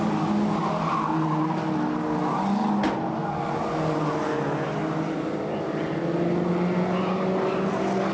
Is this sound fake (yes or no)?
no